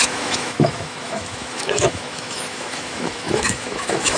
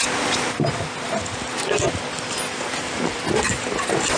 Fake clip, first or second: first